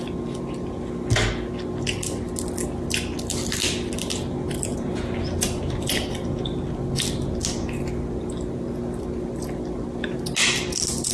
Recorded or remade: recorded